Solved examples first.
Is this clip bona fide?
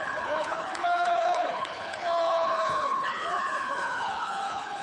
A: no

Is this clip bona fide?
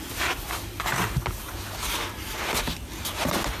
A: yes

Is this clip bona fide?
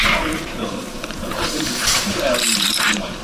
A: no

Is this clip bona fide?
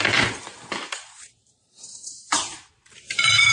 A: no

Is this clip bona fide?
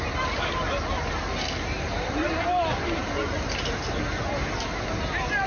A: yes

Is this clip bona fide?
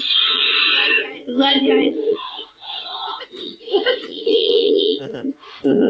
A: no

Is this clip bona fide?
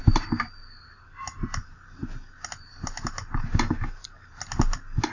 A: yes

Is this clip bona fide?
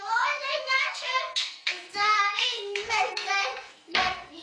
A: no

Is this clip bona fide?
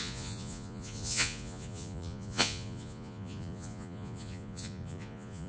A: no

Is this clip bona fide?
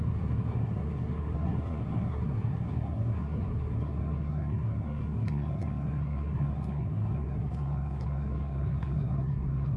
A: no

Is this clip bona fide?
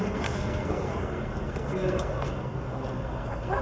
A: no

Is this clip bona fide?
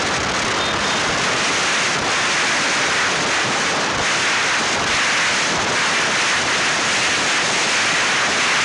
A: yes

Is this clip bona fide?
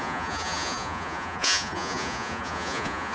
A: no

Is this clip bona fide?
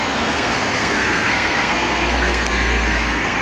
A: no